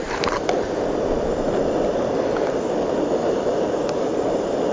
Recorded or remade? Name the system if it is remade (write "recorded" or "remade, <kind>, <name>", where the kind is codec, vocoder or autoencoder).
recorded